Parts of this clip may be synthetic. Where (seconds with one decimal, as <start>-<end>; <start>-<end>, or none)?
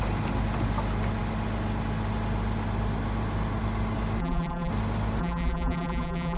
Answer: 4.2-4.7; 5.2-6.4